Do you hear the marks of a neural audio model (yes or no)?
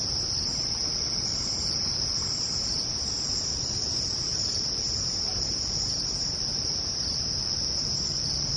yes